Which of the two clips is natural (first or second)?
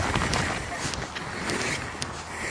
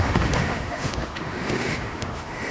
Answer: first